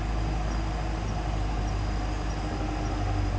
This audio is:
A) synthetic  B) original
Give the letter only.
B